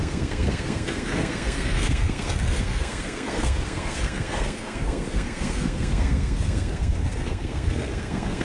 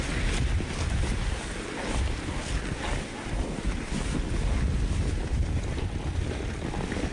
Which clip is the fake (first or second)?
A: first